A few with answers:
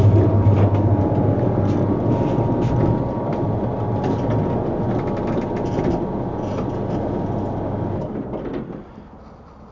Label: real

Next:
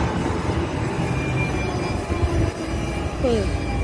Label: real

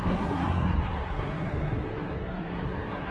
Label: fake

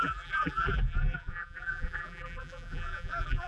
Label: fake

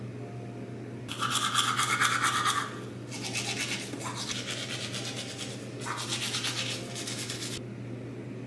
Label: real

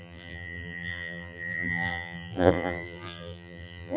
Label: fake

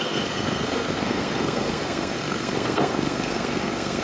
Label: fake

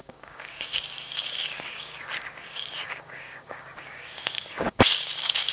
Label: fake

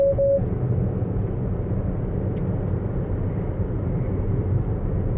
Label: real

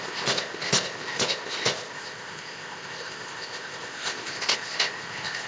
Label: fake